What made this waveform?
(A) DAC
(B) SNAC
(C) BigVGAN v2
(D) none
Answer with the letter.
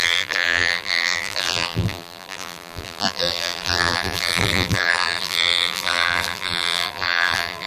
C